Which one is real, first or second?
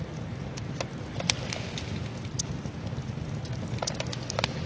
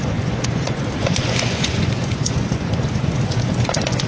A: first